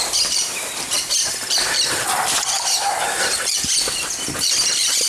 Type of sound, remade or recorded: remade